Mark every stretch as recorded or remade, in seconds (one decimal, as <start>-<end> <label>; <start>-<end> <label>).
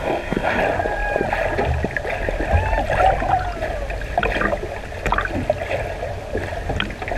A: 0.0-0.6 remade; 0.6-7.2 recorded